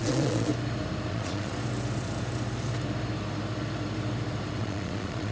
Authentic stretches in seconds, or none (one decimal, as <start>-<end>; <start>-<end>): 0.5-1.1; 1.5-4.6